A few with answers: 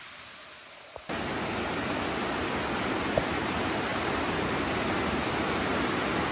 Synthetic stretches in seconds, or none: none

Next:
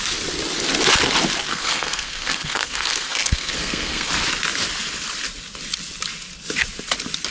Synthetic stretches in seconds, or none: 1.5-4.1 (codec, SNAC)

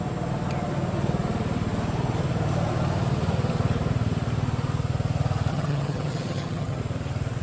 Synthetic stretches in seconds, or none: 5.5-6.8 (vocoder, HiFi-GAN)

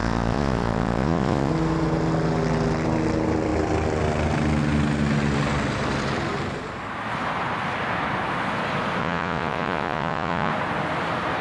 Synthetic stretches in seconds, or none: 0.0-1.5 (vocoder, Vocos); 9.0-10.5

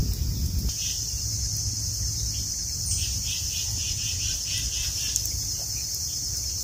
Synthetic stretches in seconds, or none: none

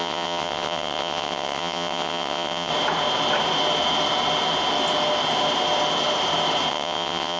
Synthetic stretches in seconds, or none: 0.0-2.7 (vocoder, WaveNeXt); 6.7-7.4

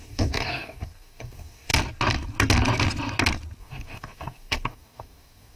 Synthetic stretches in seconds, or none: 0.0-1.7 (codec, DAC); 3.6-5.6

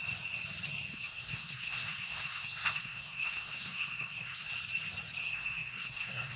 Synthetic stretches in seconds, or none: 0.9-4.5 (codec, SNAC); 5.2-6.4